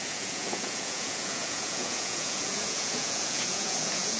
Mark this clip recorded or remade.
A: remade